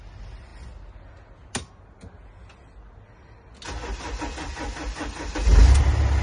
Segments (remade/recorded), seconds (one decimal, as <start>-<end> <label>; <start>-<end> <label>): 0.0-6.2 recorded